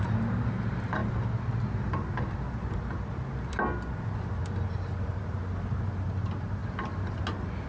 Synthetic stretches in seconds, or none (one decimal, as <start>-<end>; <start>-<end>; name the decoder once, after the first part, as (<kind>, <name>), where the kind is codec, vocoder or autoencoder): 4.4-5.2 (vocoder, BigVGAN v2)